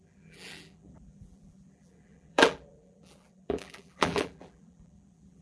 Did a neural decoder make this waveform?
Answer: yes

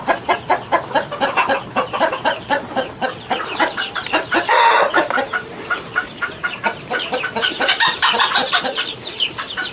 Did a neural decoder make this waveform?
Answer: yes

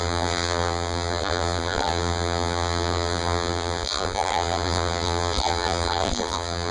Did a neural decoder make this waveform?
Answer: yes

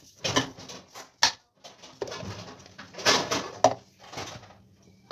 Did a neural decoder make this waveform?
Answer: no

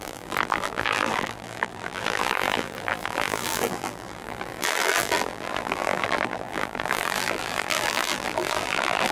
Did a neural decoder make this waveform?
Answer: yes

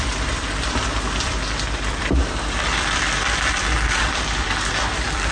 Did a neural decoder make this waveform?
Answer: yes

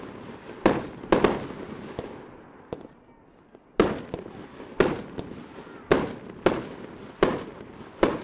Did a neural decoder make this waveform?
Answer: no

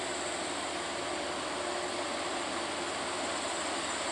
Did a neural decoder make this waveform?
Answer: yes